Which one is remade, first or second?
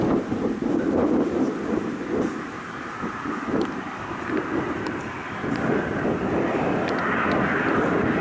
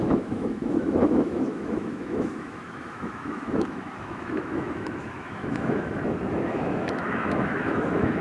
second